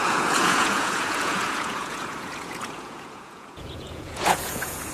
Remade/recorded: remade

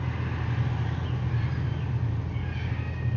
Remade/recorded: recorded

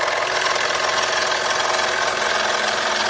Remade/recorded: recorded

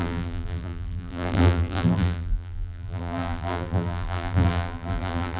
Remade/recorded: remade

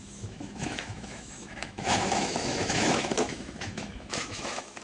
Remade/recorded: remade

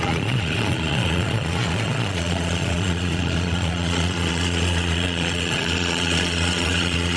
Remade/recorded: remade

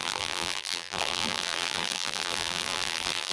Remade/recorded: remade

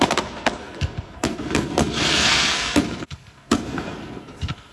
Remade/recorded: remade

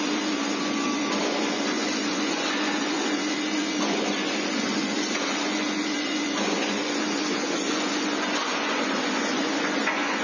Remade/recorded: remade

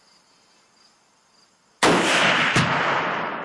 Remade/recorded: recorded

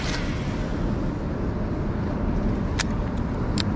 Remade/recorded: recorded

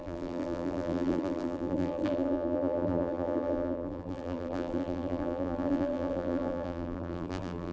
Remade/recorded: remade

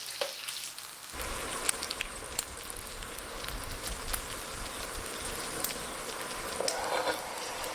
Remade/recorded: recorded